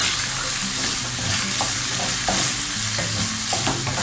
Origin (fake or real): real